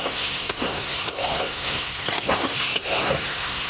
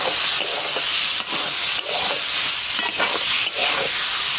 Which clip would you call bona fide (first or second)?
second